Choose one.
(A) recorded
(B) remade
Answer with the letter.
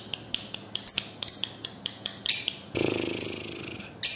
A